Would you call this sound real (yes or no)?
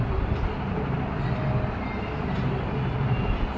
yes